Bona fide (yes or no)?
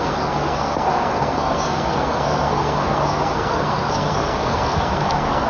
no